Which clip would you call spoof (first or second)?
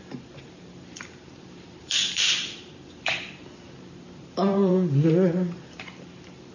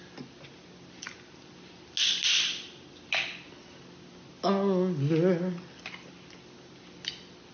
first